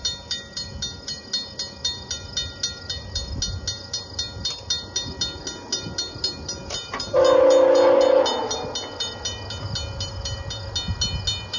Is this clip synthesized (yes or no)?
no